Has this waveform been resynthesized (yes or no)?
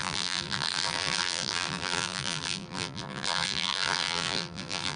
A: yes